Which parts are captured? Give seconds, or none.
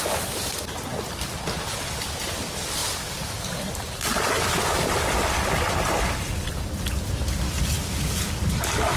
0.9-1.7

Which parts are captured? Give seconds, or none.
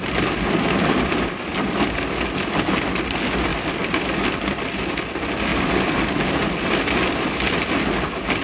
0.0-5.5; 7.5-8.4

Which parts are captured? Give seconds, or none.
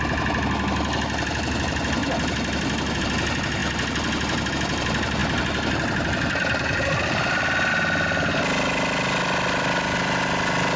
0.0-10.8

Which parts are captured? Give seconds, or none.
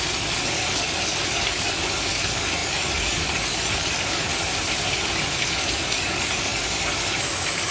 4.3-4.9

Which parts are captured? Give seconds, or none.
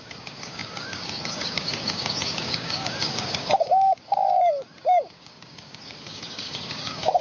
none